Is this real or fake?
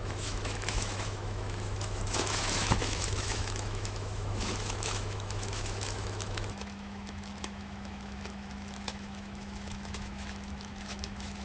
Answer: fake